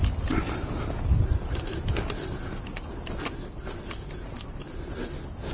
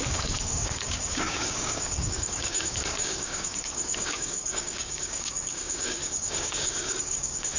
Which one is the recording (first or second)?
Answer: first